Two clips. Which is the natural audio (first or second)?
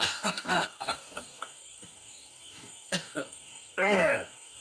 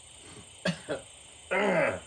second